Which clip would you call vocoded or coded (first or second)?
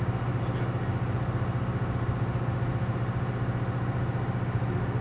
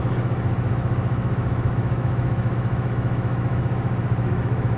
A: second